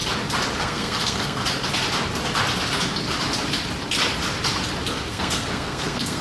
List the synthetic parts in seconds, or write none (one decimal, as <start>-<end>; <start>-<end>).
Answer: 0.6-1.4; 5.1-6.2